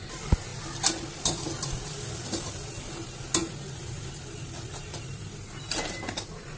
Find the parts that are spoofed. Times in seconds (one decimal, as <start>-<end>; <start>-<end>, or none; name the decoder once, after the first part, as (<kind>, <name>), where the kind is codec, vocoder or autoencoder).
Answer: none